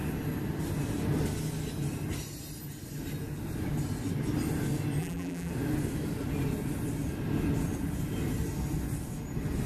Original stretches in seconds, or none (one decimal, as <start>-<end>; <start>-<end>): 0.0-5.0; 5.5-9.7